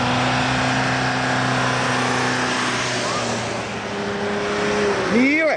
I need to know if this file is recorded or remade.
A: recorded